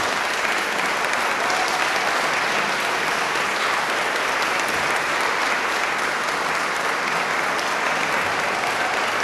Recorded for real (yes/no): yes